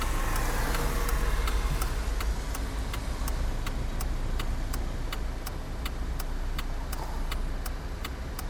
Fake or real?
real